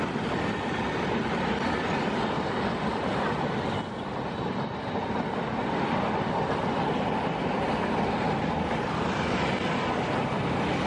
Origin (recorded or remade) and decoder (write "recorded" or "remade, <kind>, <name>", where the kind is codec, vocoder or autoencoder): recorded